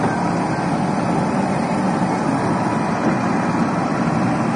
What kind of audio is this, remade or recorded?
recorded